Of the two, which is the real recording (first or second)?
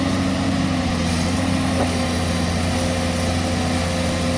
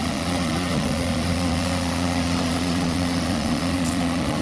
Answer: first